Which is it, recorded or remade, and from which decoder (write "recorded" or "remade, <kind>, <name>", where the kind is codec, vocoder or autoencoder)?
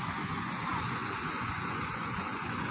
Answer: remade, vocoder, Vocos